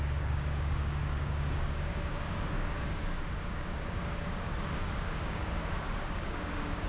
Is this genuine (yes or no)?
no